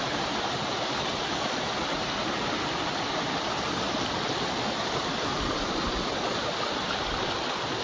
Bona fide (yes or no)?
yes